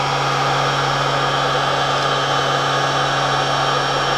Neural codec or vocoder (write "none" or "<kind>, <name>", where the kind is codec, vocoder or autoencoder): none